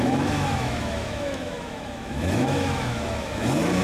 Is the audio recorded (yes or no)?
no